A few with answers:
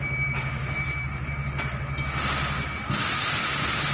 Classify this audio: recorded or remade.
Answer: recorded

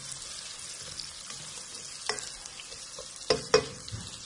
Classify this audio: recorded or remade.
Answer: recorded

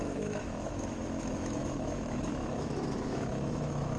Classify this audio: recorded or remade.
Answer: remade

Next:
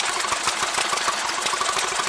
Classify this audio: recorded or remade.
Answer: recorded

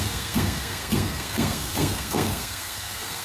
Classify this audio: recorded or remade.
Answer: remade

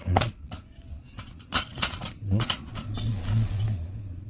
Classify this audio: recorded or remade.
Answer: remade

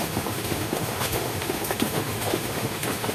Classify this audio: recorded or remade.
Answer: remade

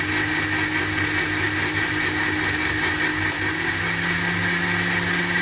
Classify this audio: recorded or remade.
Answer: recorded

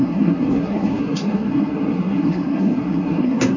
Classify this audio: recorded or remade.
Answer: remade